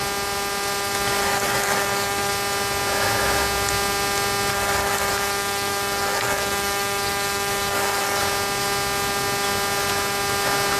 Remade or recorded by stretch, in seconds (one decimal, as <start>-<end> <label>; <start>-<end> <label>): 0.0-1.2 recorded; 1.2-2.3 remade; 2.3-4.5 recorded; 4.5-8.2 remade; 8.2-10.8 recorded